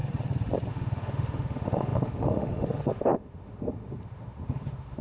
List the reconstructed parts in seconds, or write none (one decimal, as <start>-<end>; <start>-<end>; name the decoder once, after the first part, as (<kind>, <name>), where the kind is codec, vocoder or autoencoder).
0.7-5.0 (autoencoder, DAC-VAE)